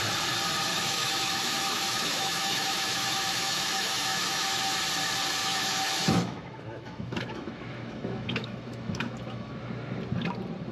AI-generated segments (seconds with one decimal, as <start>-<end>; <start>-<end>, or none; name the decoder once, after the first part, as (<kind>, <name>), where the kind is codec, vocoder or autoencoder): 0.7-4.6 (autoencoder, DAC-VAE); 5.4-9.5